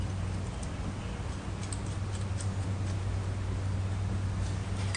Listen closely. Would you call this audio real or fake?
real